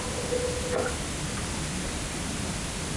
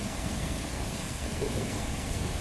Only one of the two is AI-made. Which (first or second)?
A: second